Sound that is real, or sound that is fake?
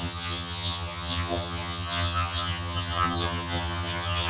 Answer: fake